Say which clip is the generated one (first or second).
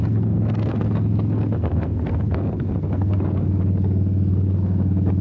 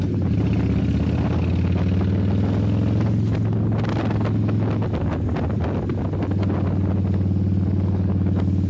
first